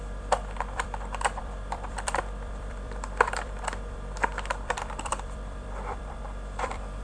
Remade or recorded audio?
remade